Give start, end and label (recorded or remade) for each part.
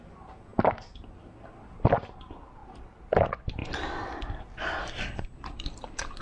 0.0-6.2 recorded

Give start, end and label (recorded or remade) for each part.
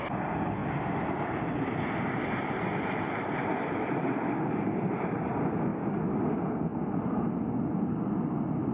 0.0-0.6 recorded; 0.6-5.3 remade; 5.3-8.7 recorded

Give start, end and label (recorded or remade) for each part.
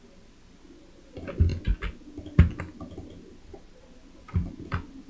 0.0-5.1 recorded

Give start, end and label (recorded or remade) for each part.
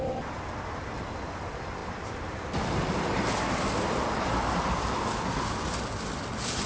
0.0-6.7 remade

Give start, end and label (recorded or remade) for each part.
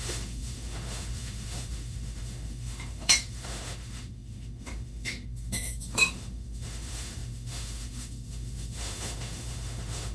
0.0-10.1 remade